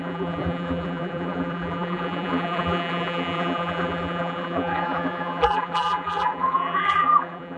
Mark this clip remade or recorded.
remade